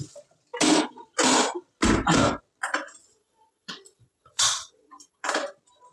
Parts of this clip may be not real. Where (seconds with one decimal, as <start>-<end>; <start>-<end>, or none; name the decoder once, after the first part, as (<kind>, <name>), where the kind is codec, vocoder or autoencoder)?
3.0-5.3 (vocoder, Vocos)